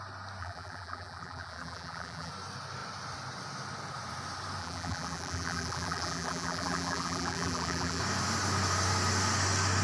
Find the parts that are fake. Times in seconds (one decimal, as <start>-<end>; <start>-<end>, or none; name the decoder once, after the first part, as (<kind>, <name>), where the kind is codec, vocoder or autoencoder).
0.4-2.3 (vocoder, BigVGAN v2); 4.6-8.0